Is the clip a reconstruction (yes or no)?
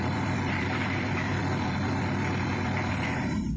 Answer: yes